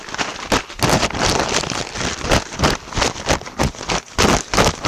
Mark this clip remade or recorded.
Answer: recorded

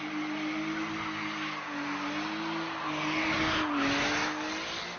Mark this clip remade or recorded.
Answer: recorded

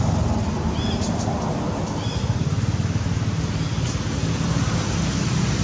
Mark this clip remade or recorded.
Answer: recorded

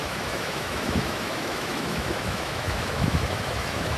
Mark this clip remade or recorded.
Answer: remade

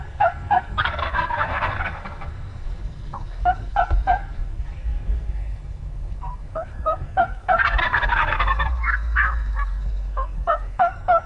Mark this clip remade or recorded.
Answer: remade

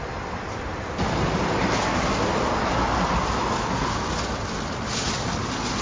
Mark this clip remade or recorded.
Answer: recorded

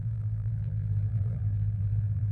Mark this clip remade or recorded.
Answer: remade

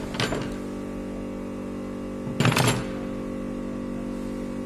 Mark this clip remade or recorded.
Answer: recorded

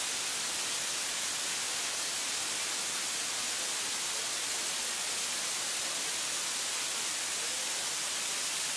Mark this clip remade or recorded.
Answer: recorded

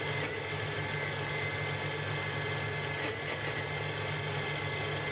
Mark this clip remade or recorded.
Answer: recorded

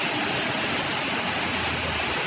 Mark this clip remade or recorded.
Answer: recorded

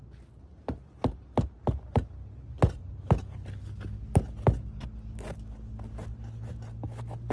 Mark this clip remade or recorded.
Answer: recorded